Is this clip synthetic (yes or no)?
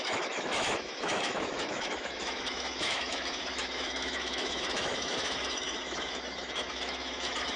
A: yes